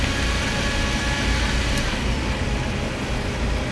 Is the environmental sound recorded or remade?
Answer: recorded